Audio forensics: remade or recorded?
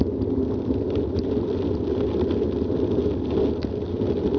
recorded